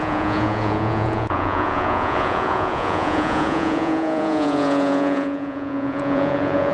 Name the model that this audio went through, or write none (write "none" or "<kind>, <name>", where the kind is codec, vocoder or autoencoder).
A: vocoder, Vocos